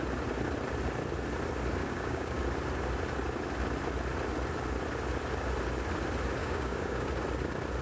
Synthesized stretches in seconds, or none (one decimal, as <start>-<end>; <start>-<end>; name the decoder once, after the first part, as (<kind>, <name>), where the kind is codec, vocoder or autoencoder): 1.8-2.4 (codec, DAC); 6.4-7.1